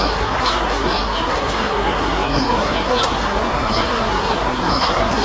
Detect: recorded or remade remade